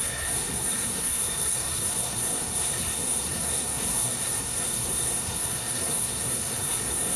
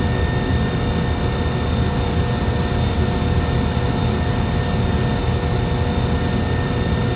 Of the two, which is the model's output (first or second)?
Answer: first